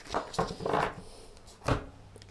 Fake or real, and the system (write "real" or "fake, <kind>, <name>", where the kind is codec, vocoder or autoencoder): real